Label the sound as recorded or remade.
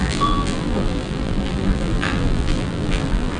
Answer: remade